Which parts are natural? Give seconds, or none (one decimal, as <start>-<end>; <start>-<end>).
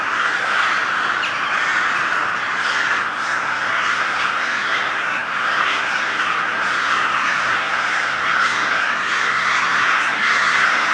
0.6-2.6